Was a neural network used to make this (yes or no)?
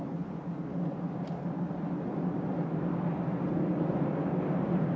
no